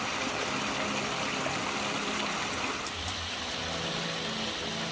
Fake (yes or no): no